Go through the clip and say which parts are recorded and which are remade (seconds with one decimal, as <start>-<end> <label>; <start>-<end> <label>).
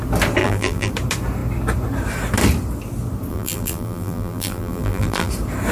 0.0-0.4 recorded; 0.4-0.9 remade; 0.9-3.3 recorded; 3.3-5.3 remade; 5.3-5.7 recorded